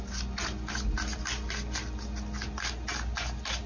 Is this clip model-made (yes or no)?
no